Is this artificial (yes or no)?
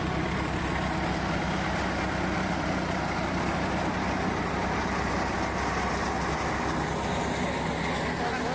no